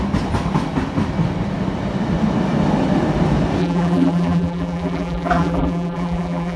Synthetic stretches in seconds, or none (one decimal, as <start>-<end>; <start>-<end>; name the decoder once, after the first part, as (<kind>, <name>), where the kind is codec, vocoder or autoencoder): 3.6-6.6 (vocoder, BigVGAN v2)